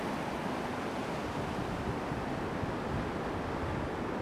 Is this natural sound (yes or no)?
yes